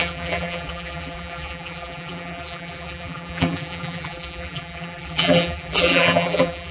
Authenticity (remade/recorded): remade